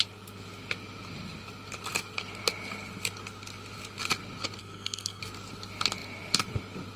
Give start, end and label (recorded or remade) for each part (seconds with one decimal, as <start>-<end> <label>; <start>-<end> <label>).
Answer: 0.0-4.6 recorded; 4.6-5.2 remade; 5.2-7.0 recorded